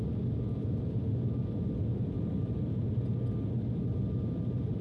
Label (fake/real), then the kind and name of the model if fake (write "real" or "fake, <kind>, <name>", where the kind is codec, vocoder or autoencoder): real